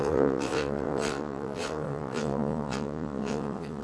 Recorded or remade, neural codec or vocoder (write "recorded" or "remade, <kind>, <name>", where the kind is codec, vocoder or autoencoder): remade, vocoder, WaveNeXt